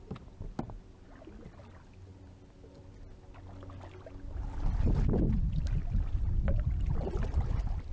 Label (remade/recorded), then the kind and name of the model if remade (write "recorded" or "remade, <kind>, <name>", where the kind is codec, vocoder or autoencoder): recorded